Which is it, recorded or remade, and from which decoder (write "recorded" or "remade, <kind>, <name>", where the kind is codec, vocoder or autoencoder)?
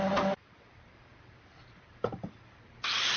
recorded